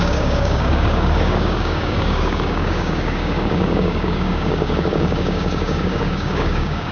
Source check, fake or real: fake